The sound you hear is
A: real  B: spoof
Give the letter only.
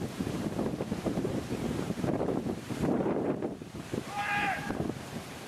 B